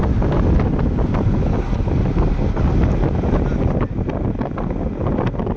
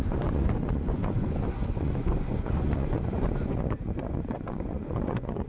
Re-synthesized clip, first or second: second